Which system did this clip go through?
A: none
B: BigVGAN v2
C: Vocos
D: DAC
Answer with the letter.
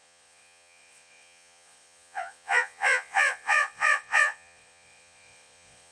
C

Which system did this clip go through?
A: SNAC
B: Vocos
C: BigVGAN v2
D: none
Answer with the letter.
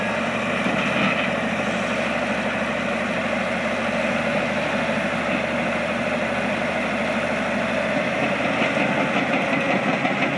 D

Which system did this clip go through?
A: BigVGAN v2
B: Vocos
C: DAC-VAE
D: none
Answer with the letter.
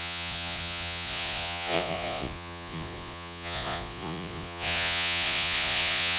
B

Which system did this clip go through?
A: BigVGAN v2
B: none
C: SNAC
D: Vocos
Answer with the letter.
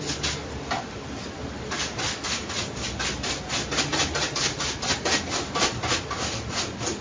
B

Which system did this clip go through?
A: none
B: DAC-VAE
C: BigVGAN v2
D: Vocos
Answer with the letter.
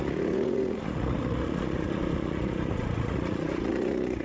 D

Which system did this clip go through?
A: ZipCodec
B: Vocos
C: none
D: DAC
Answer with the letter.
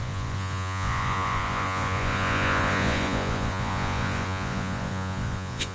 B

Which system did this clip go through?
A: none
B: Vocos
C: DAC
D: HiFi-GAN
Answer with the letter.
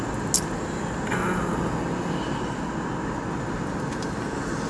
A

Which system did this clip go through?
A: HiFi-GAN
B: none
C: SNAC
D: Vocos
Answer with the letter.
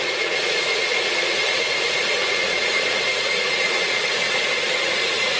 D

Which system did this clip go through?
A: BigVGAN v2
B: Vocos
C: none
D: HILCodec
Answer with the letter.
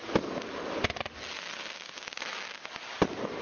C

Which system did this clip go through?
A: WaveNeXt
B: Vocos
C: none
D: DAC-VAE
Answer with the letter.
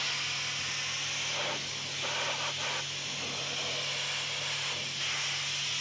C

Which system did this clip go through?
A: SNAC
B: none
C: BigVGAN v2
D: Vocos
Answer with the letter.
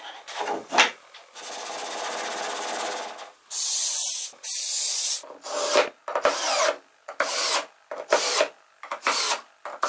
B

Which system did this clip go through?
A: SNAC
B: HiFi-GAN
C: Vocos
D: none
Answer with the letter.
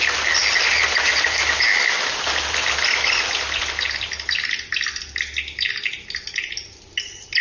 D